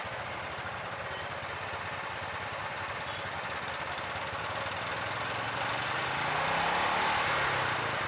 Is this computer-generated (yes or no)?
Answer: no